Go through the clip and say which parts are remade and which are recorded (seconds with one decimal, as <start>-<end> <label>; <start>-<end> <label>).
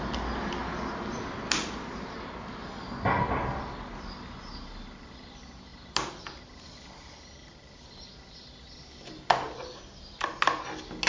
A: 0.0-11.1 recorded